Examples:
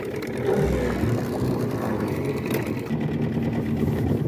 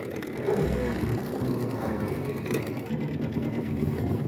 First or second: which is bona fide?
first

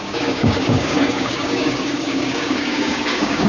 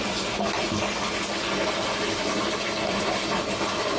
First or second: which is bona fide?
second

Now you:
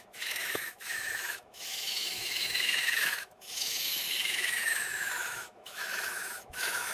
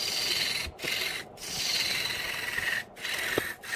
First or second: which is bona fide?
second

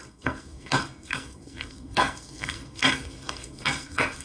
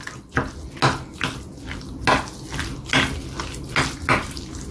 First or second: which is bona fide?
second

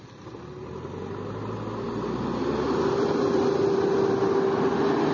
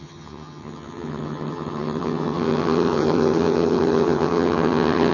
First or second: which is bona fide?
first